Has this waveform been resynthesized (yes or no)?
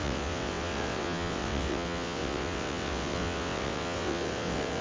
yes